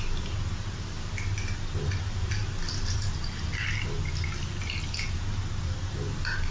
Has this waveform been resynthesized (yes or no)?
no